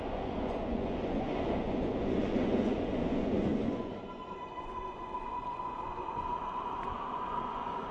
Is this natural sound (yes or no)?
no